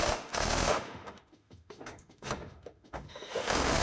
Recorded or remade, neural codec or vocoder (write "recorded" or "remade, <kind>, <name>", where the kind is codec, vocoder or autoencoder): remade, autoencoder, DAC-VAE